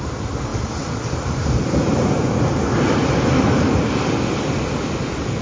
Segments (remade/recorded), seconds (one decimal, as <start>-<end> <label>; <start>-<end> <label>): 0.0-5.4 recorded

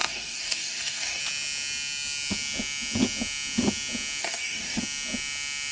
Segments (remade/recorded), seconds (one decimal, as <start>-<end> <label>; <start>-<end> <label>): 0.0-1.2 remade; 1.2-4.2 recorded; 4.2-4.8 remade; 4.8-5.7 recorded

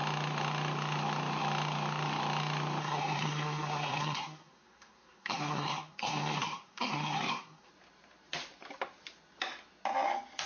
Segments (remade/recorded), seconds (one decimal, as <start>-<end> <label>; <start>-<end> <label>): 0.0-2.8 recorded; 2.8-7.7 remade; 7.7-10.5 recorded

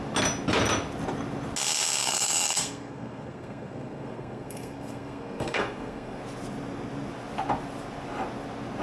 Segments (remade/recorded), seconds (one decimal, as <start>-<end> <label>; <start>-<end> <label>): 0.0-2.0 recorded; 2.0-6.2 remade; 6.2-8.8 recorded

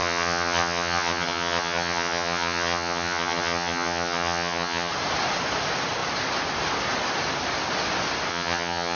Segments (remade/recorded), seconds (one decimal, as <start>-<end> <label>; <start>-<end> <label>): 0.0-4.9 remade; 4.9-8.3 recorded; 8.3-9.0 remade

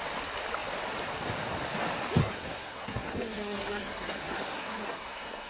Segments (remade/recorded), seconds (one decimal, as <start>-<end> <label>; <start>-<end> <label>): 0.0-2.2 recorded; 2.2-5.5 remade